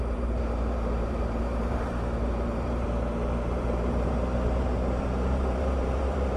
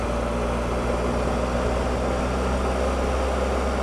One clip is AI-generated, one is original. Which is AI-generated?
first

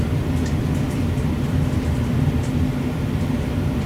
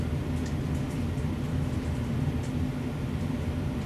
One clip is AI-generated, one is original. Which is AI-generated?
first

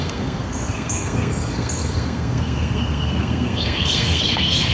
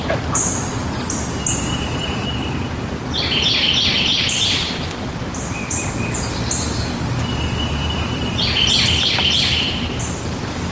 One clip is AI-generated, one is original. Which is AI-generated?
first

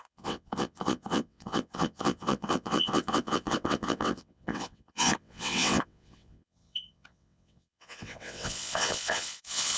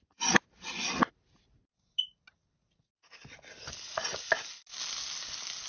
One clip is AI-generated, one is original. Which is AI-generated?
first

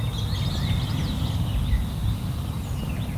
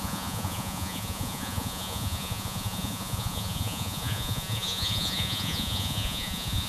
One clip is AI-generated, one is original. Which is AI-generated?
second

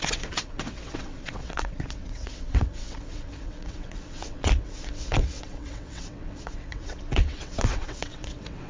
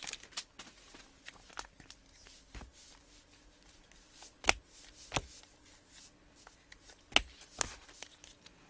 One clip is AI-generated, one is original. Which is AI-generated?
first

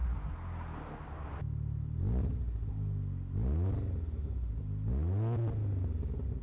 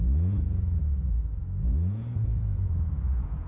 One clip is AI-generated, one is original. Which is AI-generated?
second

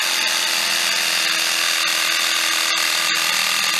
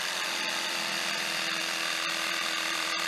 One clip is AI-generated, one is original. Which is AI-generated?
second